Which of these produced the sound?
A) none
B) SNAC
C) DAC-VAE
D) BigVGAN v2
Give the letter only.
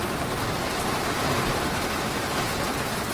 D